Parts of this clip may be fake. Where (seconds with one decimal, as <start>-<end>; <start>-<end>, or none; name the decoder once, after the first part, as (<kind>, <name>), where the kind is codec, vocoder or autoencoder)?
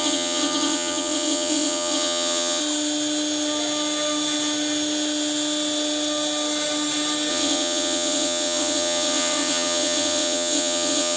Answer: 0.0-2.6 (vocoder, WaveNeXt); 7.3-11.2